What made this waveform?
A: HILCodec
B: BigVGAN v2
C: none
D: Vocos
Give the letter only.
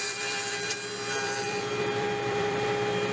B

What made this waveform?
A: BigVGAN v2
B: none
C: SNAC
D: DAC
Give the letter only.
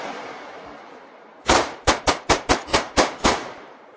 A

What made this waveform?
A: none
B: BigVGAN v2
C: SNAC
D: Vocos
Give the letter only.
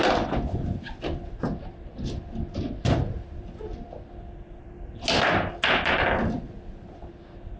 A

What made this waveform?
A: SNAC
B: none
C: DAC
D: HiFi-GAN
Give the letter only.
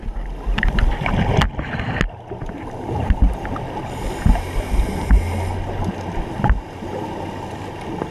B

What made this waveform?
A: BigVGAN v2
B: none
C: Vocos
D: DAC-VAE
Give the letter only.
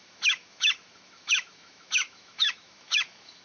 D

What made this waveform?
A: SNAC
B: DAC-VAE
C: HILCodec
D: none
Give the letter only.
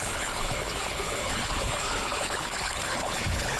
C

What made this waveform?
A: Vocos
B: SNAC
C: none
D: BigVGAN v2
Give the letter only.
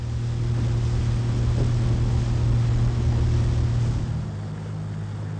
C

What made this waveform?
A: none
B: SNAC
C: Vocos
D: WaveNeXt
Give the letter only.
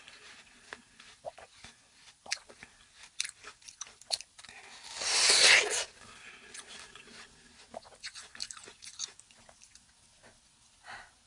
A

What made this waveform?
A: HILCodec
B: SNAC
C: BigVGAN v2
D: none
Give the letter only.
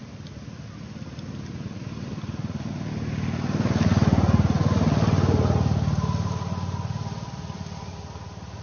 D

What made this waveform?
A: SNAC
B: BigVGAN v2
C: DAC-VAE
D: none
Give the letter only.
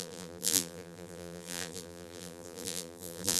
B